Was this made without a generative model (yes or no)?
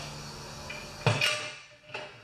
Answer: yes